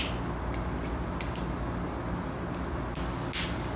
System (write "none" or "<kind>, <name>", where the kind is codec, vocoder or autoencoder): none